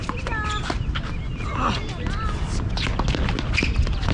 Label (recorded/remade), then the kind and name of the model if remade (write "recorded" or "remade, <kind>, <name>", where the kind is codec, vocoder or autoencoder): recorded